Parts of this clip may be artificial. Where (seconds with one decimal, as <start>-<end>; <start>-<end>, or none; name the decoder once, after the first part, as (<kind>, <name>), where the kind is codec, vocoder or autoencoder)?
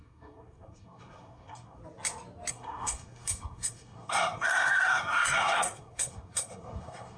0.0-1.8 (codec, SNAC); 2.5-7.2